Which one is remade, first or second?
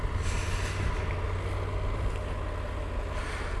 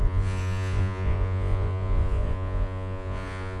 second